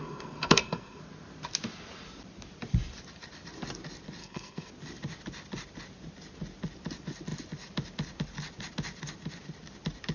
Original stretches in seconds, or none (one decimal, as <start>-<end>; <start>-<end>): 1.0-4.2; 4.7-10.1

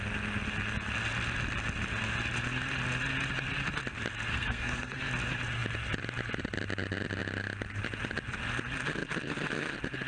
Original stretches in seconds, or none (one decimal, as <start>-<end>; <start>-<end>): 0.0-4.3; 5.0-10.1

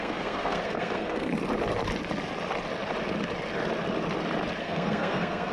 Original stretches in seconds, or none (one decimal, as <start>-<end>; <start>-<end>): 1.3-4.6

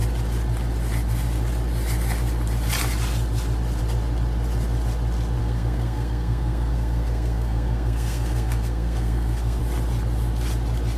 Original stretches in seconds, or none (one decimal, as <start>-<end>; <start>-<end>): 0.0-5.4; 9.6-11.0

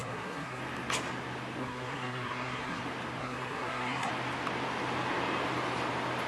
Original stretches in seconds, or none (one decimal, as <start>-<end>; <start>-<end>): 0.6-1.6; 2.8-3.2; 4.1-6.3

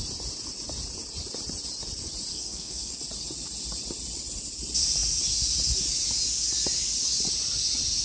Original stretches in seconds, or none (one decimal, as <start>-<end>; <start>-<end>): 0.0-2.3; 2.9-8.0

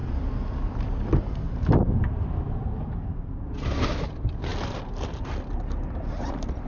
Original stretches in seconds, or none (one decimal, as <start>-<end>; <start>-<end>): 0.0-6.7

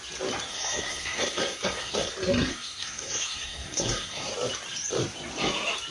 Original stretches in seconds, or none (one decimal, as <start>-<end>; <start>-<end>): 0.0-0.5; 2.1-2.5; 4.3-5.9